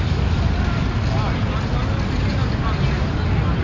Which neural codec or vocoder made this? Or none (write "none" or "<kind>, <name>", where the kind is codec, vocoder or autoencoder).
none